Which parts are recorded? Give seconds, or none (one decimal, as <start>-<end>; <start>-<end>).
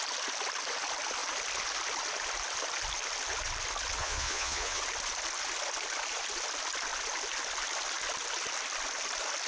0.0-4.0; 4.8-9.5